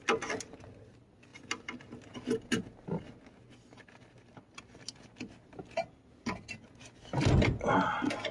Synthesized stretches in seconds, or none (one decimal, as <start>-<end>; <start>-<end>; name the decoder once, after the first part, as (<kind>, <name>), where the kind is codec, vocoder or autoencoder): none